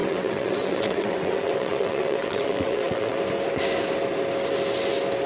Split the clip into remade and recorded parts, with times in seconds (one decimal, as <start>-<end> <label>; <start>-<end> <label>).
0.0-3.2 remade; 3.2-5.3 recorded